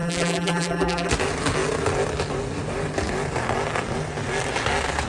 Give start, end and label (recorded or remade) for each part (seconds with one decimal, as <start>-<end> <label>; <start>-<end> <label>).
0.0-1.1 remade; 1.1-5.1 recorded